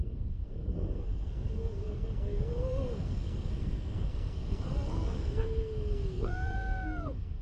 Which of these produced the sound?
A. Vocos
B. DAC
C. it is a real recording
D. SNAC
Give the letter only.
D